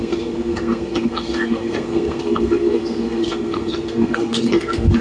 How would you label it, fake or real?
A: fake